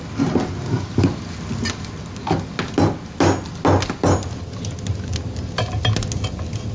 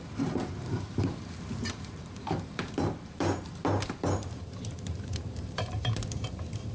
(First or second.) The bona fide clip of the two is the first